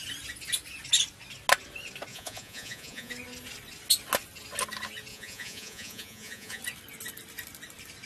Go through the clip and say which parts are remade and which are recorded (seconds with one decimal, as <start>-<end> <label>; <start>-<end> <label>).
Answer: 0.0-2.1 recorded; 2.1-3.1 remade; 3.1-5.1 recorded; 5.1-6.6 remade; 6.6-8.1 recorded